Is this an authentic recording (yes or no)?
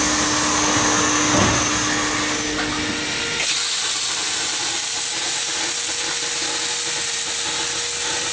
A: yes